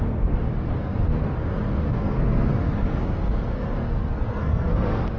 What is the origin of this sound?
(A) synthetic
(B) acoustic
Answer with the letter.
A